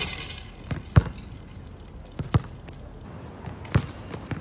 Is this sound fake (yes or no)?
no